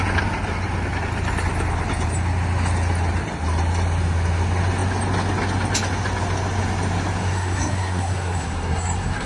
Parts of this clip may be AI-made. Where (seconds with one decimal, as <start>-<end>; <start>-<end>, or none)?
7.2-9.3